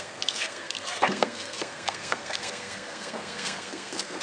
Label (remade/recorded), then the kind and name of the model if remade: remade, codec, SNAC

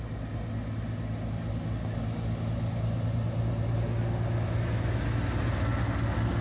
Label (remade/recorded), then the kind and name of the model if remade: recorded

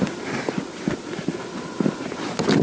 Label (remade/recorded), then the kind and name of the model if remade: recorded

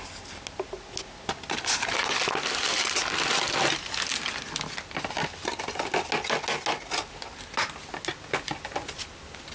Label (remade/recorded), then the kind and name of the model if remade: recorded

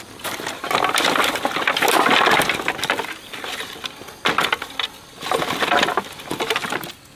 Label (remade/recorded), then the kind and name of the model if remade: recorded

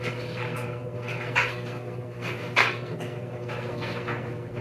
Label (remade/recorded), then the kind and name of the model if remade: remade, codec, SNAC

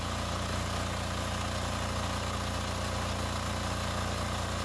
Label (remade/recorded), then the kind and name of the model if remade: recorded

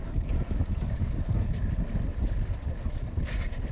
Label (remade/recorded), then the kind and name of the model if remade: recorded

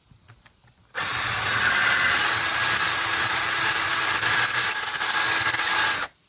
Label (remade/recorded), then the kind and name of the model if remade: recorded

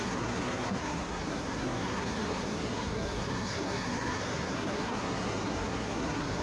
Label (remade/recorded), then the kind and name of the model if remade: remade, codec, SNAC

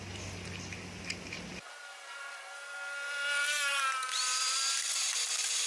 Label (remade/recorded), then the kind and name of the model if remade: recorded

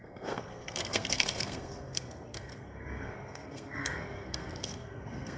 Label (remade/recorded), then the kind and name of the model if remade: remade, codec, SNAC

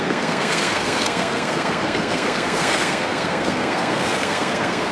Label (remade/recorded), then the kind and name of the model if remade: remade, codec, SNAC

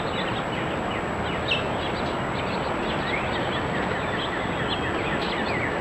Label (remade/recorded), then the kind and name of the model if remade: recorded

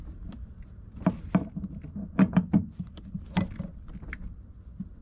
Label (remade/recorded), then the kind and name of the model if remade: recorded